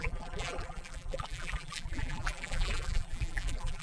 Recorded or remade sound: remade